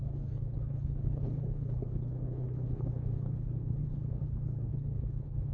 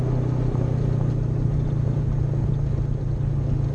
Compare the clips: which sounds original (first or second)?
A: second